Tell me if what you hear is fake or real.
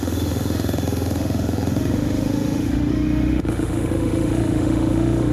fake